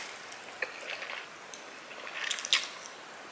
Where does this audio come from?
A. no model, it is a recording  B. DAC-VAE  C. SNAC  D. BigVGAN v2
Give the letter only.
A